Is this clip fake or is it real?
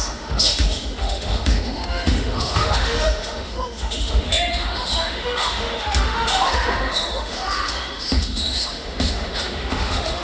fake